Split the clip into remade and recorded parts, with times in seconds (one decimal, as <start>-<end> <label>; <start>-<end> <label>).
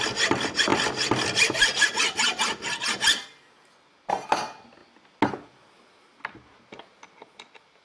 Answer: 0.0-7.8 recorded